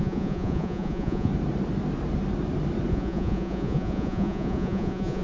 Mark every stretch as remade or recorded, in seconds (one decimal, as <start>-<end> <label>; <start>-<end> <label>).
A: 0.0-1.3 remade; 1.3-2.9 recorded; 2.9-5.2 remade